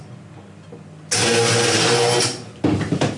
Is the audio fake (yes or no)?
no